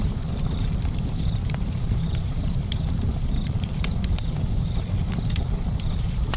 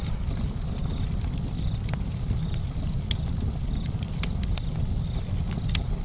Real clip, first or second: second